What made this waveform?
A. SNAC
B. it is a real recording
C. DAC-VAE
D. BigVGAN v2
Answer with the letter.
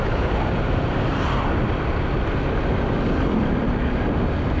D